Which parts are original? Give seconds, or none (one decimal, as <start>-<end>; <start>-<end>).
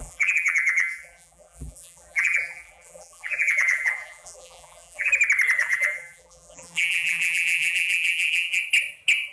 5.1-5.6; 8.6-9.3